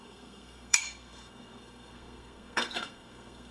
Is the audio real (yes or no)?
no